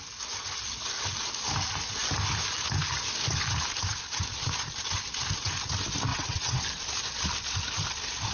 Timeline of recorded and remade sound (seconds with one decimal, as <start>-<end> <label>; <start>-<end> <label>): 0.0-6.1 recorded; 6.1-6.6 remade; 6.6-8.3 recorded